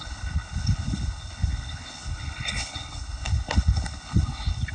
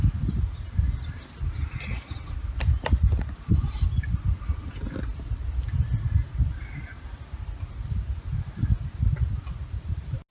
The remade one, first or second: first